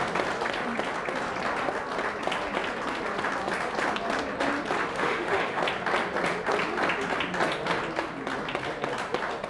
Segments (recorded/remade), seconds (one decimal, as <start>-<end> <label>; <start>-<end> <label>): 0.0-4.9 recorded; 4.9-5.6 remade; 5.6-9.5 recorded